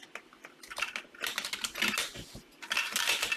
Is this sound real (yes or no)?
yes